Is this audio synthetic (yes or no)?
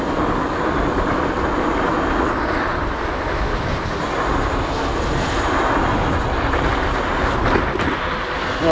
no